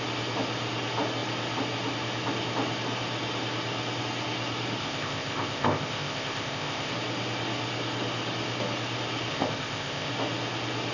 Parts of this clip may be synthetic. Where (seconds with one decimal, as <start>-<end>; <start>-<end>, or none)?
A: 4.8-6.9; 9.3-10.1